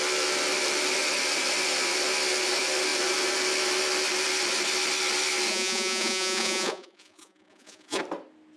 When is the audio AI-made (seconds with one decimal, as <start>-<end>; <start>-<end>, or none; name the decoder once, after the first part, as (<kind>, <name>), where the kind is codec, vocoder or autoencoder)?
5.5-8.0 (vocoder, Vocos)